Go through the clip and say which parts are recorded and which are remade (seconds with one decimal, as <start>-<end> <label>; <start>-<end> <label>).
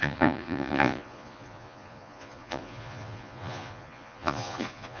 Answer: 0.0-5.0 remade